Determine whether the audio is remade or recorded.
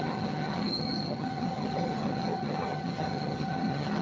remade